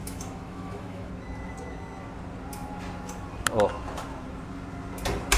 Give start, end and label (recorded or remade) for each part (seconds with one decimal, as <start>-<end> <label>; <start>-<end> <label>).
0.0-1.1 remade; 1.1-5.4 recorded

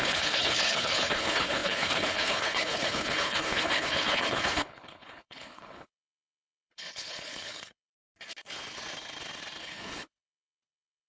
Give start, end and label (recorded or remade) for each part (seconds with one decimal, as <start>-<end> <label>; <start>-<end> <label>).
0.0-7.9 remade; 7.9-9.6 recorded; 9.6-11.1 remade

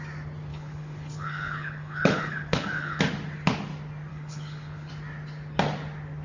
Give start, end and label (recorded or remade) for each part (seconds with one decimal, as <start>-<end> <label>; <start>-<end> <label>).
0.0-0.5 recorded; 0.5-3.0 remade; 3.0-4.1 recorded; 4.1-4.9 remade; 4.9-6.2 recorded